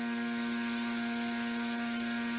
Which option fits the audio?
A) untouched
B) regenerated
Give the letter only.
A